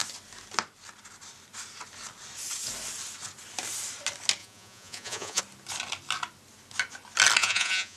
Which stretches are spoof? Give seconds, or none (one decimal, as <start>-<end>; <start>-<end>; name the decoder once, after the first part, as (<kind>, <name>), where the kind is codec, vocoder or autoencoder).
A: 4.4-5.4 (vocoder, Vocos); 7.4-8.0